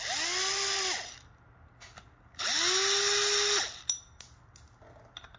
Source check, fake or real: real